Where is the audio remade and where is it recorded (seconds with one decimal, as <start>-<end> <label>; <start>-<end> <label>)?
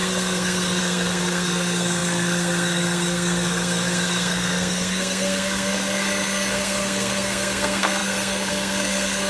0.0-9.3 remade